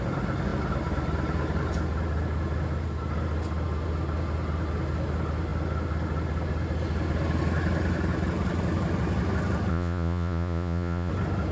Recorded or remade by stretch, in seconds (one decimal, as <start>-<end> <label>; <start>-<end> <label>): 0.0-9.7 recorded; 9.7-11.1 remade; 11.1-11.5 recorded